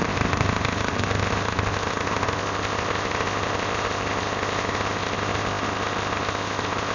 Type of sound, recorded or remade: remade